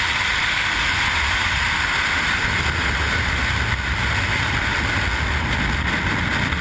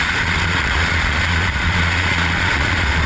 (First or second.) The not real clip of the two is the second